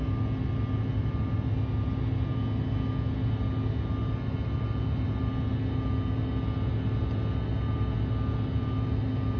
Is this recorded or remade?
recorded